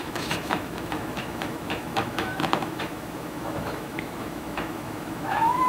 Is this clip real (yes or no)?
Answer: no